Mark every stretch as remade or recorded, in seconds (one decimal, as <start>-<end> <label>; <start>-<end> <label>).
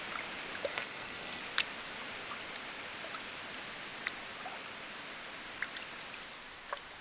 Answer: 0.0-0.7 recorded; 0.7-1.4 remade; 1.4-7.0 recorded